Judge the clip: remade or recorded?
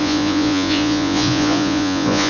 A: remade